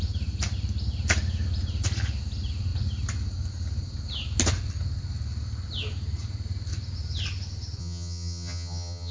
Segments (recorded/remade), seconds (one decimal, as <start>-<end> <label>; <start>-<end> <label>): 0.0-7.8 recorded; 7.8-9.1 remade